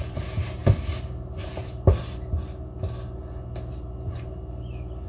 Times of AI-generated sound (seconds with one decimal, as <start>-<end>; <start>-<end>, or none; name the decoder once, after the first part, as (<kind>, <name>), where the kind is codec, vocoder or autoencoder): none